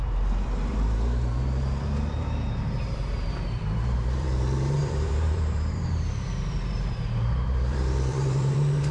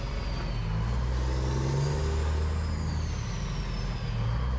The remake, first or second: first